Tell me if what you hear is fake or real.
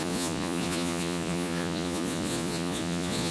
fake